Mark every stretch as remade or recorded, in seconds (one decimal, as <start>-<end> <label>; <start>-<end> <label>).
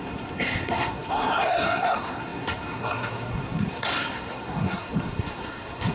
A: 0.0-5.9 remade